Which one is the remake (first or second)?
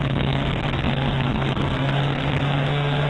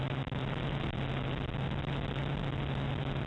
first